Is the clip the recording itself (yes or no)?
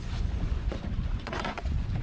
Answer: no